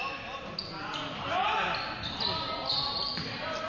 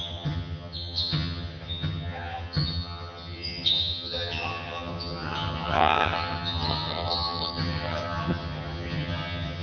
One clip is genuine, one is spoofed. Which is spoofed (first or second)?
second